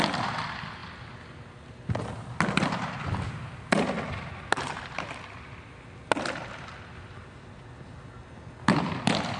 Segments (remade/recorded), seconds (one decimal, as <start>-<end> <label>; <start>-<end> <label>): 0.0-9.4 recorded